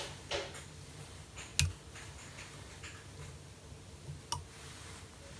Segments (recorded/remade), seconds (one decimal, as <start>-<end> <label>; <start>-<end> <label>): 0.0-5.4 recorded